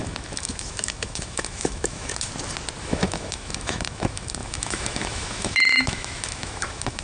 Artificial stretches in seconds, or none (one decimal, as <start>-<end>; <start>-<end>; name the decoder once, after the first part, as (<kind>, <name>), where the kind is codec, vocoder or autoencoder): 0.0-2.3 (autoencoder, DAC-VAE); 2.8-7.0